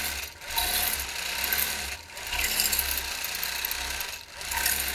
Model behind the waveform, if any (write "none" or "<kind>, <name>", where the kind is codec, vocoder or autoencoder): none